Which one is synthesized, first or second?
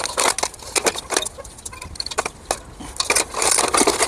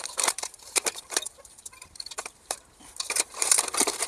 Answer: second